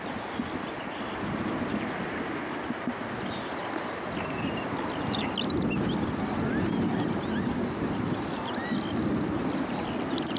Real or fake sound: real